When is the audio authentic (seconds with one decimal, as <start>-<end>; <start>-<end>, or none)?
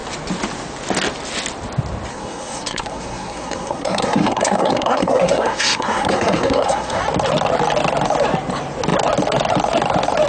0.0-2.1; 7.0-10.3